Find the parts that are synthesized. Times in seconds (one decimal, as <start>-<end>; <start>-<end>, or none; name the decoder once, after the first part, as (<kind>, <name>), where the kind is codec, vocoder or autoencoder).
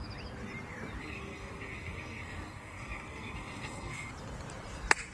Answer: 1.0-4.1 (codec, SNAC)